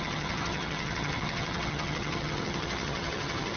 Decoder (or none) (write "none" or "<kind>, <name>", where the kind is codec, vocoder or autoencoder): vocoder, HiFi-GAN